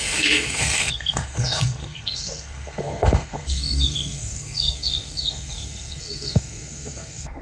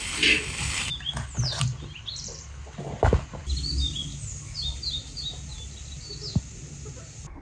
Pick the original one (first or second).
second